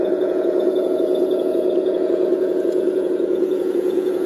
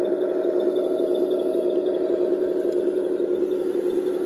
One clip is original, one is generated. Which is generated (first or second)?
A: first